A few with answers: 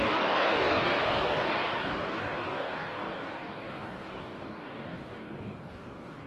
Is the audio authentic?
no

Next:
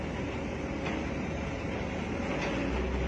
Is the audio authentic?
yes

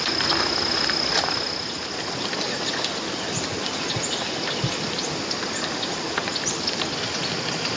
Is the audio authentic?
yes